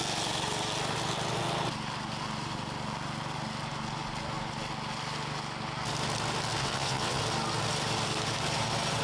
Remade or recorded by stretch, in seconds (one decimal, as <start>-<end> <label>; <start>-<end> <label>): 0.0-6.6 recorded; 6.6-7.2 remade; 7.2-9.0 recorded